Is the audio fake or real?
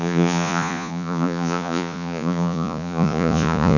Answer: fake